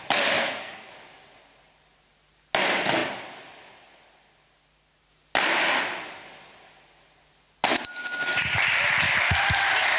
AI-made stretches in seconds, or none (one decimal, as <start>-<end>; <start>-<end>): 0.4-0.9